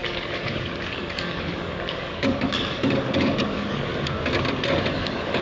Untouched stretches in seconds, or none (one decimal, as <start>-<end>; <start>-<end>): 3.9-4.9

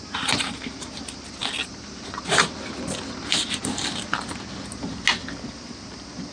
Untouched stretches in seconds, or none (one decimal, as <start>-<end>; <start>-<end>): 0.0-6.3